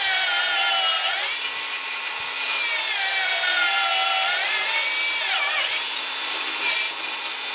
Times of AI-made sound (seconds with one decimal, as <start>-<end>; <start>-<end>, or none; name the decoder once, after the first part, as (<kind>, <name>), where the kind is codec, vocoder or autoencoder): 0.9-2.0 (vocoder, BigVGAN v2)